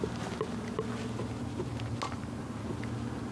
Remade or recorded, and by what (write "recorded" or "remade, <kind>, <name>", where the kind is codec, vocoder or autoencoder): recorded